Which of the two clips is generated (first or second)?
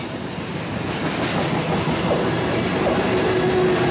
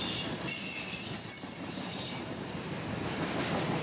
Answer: second